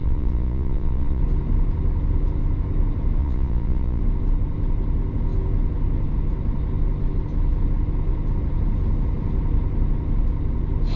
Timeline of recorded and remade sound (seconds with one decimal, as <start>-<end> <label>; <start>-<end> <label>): 0.0-1.2 remade; 1.2-3.2 recorded; 3.2-4.0 remade; 4.0-11.0 recorded

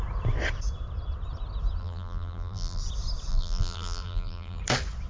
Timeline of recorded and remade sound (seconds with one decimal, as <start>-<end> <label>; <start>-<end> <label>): 0.0-1.8 recorded; 1.8-2.8 remade; 2.8-3.3 recorded; 3.3-4.6 remade; 4.6-5.1 recorded

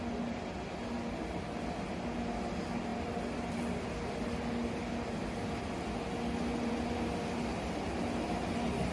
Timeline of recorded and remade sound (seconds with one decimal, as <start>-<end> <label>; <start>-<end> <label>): 0.0-8.9 recorded

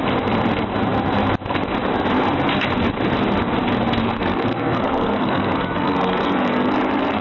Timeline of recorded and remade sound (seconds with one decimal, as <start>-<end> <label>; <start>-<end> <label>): 0.0-4.0 recorded; 4.0-7.2 remade